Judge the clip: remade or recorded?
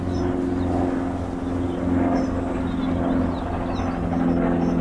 recorded